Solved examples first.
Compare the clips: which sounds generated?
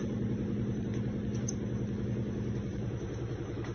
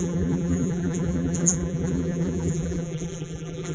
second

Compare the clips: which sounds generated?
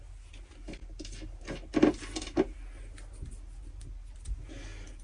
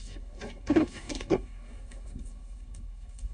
second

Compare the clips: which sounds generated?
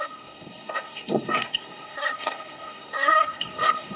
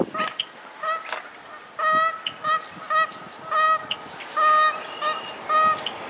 first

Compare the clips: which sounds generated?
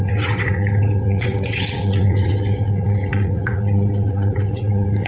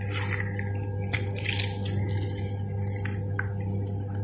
first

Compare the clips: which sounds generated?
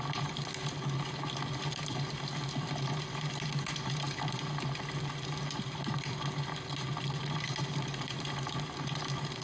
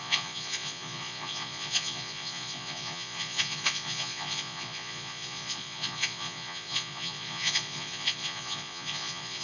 second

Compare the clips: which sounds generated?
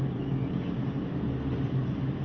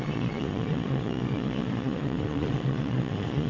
second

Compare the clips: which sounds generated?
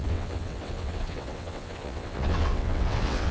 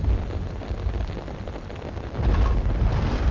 first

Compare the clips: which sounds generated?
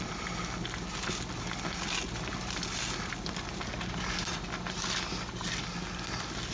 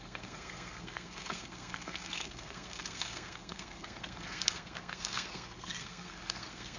second